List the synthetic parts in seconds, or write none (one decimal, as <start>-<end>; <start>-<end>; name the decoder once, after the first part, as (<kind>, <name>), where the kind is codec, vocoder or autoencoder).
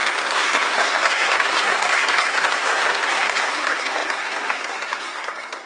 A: 0.0-5.7 (codec, SNAC)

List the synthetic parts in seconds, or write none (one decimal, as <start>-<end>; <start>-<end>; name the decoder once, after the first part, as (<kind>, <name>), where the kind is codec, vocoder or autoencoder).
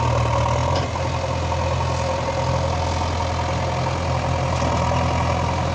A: none